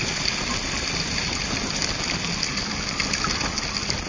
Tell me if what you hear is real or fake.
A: real